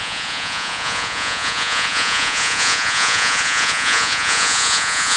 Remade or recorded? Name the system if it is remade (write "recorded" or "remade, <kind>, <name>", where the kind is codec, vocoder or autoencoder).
remade, vocoder, Vocos